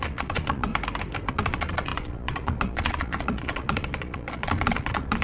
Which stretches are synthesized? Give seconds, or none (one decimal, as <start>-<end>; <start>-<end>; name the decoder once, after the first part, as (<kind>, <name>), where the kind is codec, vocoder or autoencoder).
0.0-0.7 (vocoder, Vocos); 1.3-5.2

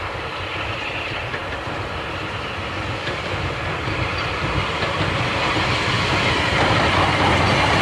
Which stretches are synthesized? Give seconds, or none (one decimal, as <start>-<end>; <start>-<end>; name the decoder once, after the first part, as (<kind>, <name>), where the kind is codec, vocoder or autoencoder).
none

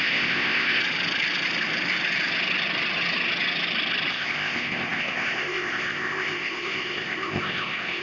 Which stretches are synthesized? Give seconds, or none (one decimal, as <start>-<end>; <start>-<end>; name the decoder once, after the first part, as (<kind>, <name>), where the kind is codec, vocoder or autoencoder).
0.0-0.8 (codec, ZipCodec); 4.1-8.0

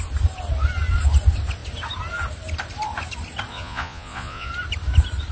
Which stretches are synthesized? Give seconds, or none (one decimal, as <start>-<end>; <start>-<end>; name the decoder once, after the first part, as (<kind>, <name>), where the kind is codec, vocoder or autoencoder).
3.5-4.5 (vocoder, Vocos)

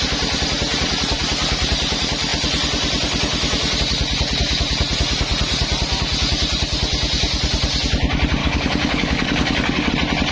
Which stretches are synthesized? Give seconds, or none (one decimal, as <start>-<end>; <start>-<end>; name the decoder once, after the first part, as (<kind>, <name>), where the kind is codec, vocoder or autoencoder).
8.4-9.9 (codec, DAC)

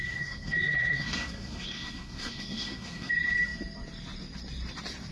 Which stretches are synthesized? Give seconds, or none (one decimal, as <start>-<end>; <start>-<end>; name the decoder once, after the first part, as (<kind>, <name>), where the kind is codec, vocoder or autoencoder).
0.0-3.1 (codec, SNAC)